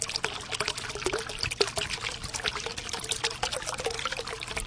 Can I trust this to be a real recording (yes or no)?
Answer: yes